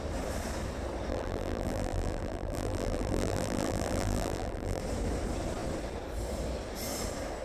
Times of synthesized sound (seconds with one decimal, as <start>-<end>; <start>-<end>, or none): 1.1-4.8